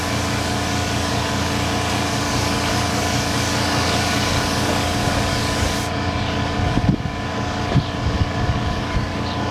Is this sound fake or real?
fake